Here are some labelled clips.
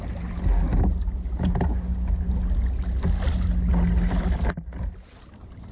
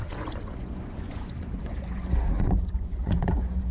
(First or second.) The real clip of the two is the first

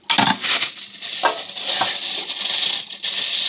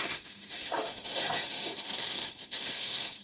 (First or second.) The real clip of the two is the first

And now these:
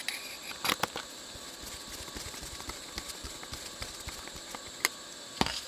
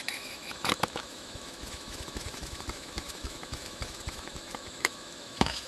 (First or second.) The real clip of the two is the first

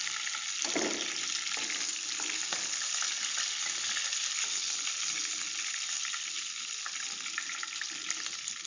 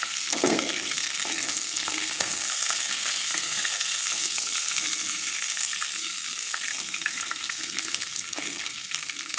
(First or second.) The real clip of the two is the first